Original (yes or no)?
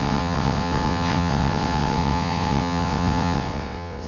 no